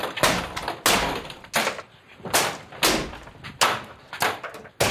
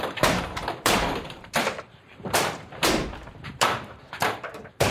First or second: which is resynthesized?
second